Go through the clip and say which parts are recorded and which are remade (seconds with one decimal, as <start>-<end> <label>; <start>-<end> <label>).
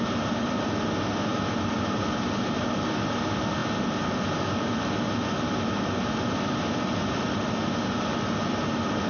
0.0-9.1 recorded